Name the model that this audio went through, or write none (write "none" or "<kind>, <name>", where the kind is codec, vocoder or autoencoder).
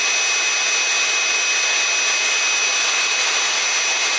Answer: none